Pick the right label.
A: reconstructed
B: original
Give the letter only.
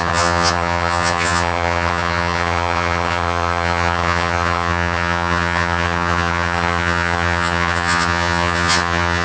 A